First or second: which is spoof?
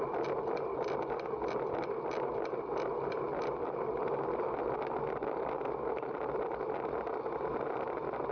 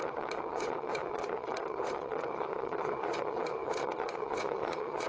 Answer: second